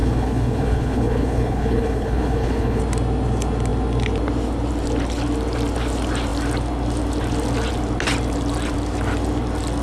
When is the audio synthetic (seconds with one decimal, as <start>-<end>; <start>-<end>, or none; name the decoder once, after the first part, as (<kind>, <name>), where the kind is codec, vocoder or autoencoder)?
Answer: 0.0-2.8 (codec, HILCodec)